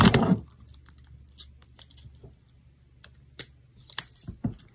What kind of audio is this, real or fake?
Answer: fake